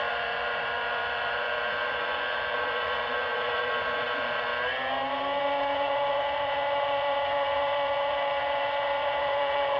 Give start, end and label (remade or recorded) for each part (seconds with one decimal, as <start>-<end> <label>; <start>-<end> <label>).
0.0-4.5 remade; 4.5-5.4 recorded; 5.4-9.8 remade